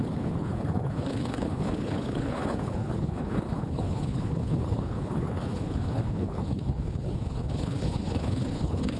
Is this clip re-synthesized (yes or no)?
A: yes